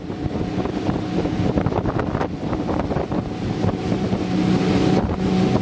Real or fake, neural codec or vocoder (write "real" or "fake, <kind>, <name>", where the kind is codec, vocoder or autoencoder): real